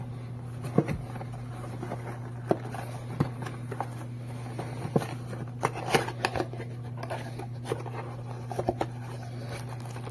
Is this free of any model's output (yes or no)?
yes